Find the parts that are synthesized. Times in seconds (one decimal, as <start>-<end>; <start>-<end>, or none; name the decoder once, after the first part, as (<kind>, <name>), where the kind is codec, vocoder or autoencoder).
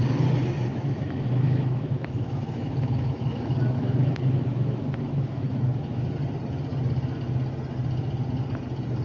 0.7-6.0 (autoencoder, DAC-VAE)